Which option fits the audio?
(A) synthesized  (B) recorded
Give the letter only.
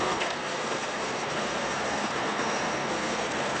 A